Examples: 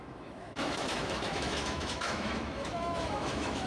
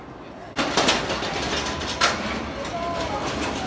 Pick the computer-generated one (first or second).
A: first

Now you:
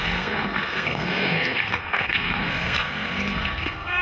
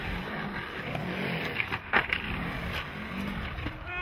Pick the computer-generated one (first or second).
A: first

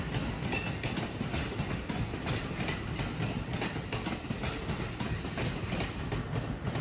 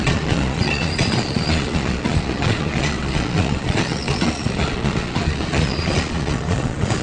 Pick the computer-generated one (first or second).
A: second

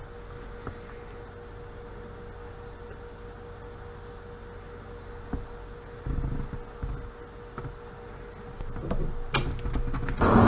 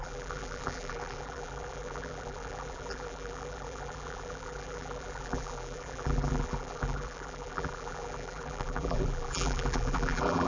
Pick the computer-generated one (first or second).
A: second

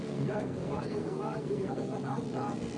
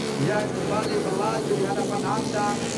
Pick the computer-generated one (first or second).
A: first